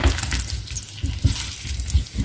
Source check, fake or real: real